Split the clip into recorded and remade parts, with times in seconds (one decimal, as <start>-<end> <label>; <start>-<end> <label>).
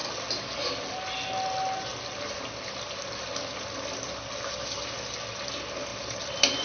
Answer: 0.0-6.6 recorded